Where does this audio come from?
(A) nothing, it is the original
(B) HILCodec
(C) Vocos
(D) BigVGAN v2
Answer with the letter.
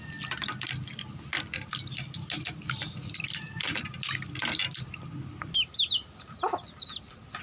A